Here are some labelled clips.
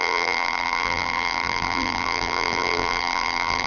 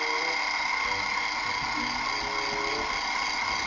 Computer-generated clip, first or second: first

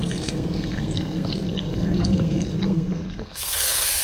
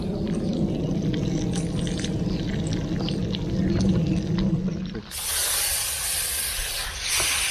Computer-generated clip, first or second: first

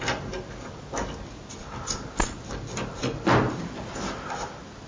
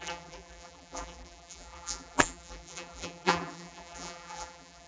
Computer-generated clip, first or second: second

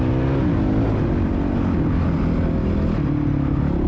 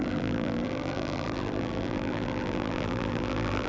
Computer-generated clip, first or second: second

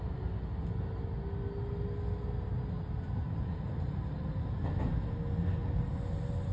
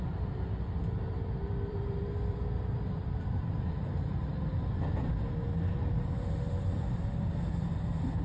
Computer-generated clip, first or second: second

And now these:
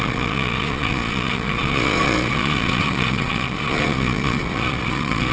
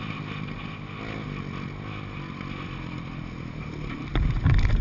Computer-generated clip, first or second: first